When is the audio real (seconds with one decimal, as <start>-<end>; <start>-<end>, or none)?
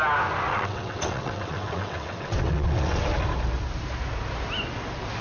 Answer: 0.0-0.5; 3.0-5.2